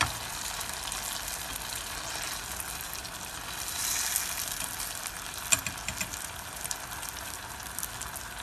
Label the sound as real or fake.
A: real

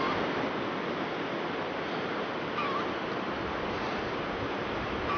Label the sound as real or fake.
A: real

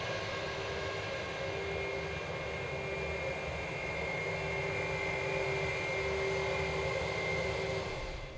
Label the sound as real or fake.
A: real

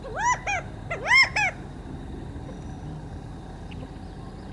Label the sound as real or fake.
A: real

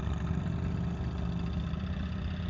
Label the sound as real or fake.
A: real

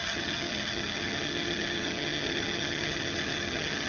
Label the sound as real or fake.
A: fake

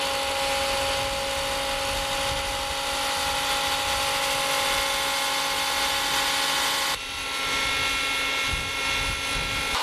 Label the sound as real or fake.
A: real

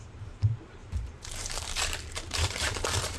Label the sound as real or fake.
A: fake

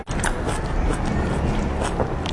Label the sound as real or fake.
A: real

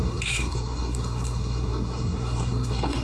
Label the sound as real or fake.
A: fake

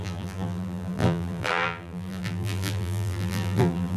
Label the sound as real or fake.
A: fake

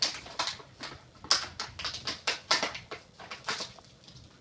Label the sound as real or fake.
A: real